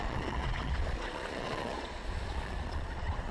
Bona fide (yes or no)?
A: no